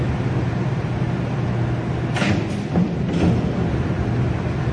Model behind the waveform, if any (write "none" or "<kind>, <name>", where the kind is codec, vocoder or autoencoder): none